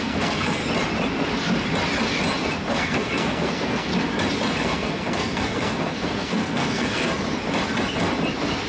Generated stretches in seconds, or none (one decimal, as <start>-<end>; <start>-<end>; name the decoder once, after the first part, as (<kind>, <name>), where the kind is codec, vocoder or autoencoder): 0.0-0.6 (codec, SNAC); 2.7-3.9; 4.6-7.1